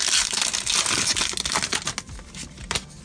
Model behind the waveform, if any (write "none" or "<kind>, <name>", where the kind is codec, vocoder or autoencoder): none